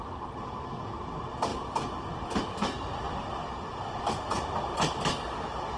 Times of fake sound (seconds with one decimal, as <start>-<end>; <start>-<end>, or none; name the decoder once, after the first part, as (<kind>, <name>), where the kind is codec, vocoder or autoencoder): none